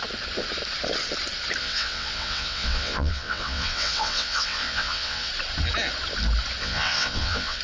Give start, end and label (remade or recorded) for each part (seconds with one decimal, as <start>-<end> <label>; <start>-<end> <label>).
0.0-1.6 recorded; 1.6-5.3 remade; 5.3-6.6 recorded; 6.6-7.6 remade